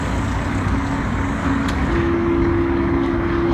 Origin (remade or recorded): remade